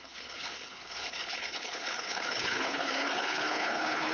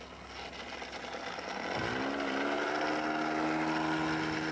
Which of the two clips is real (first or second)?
second